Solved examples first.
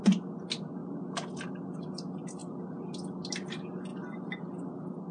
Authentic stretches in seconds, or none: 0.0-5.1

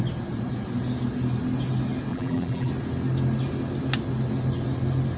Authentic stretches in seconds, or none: 0.0-2.1; 2.7-5.2

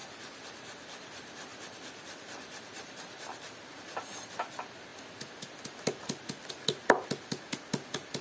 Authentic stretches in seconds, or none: 0.0-1.5; 4.2-8.2

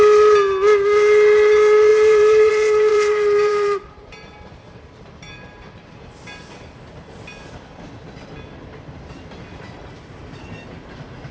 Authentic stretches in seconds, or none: 0.0-1.9; 2.5-2.9; 4.0-11.3